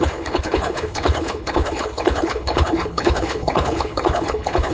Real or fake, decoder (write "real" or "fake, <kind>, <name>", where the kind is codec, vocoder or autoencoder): fake, codec, HILCodec